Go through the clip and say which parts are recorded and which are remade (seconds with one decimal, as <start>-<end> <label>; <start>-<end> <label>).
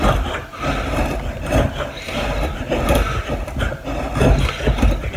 0.0-5.2 recorded